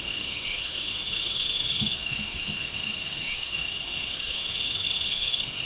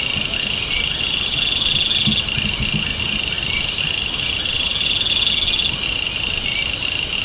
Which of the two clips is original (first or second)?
second